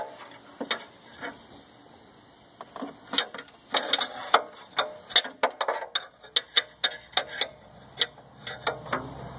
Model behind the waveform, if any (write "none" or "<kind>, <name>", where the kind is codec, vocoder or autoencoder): none